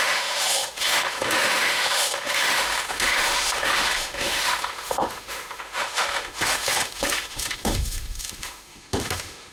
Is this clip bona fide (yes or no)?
no